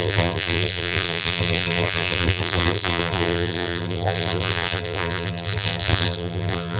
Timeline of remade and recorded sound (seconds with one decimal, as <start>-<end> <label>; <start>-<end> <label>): 0.0-6.8 remade